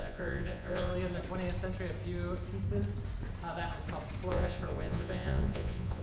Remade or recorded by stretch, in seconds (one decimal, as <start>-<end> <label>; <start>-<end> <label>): 0.0-0.9 remade; 0.9-4.3 recorded; 4.3-6.0 remade